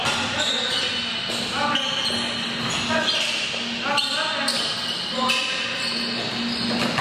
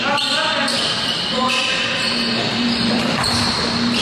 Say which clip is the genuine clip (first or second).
first